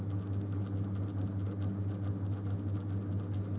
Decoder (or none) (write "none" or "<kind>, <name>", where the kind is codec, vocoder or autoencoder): none